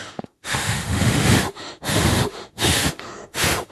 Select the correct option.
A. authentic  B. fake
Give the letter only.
B